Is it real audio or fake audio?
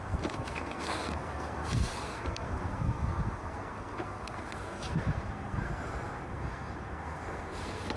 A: fake